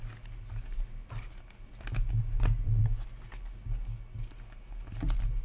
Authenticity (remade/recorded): recorded